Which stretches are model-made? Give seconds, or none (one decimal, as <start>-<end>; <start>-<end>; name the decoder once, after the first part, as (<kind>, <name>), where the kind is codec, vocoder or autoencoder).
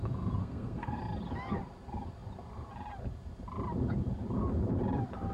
0.4-1.0 (codec, SNAC)